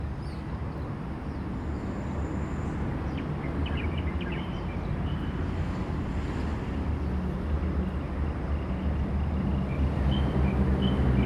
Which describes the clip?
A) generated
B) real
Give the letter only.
B